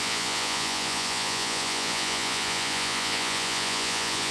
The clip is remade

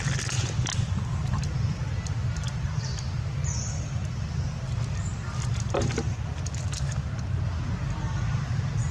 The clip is recorded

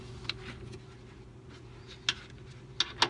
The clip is recorded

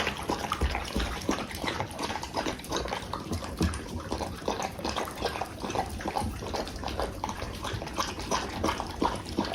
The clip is remade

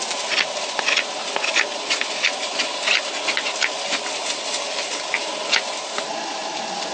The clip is recorded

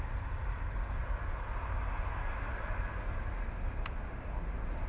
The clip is recorded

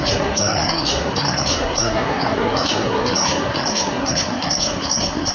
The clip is remade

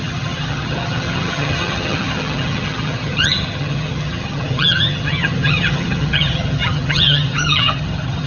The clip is remade